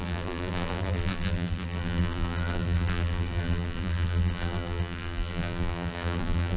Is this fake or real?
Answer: fake